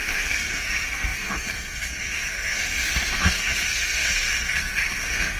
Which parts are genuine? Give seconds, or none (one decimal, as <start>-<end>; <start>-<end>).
none